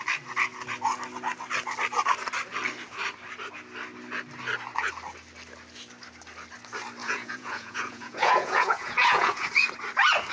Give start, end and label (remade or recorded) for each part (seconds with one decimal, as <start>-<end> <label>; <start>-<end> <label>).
0.0-7.0 recorded; 7.0-9.5 remade; 9.5-10.3 recorded